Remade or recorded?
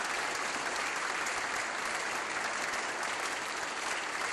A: recorded